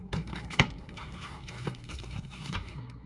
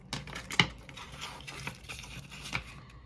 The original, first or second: second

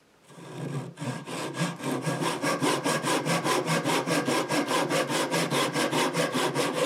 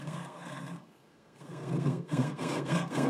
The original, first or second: first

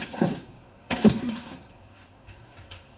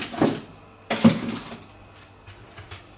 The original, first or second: second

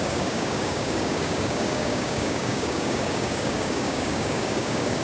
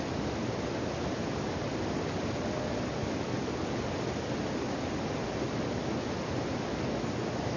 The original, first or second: second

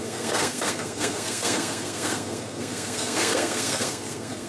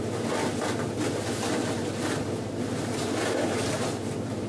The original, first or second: second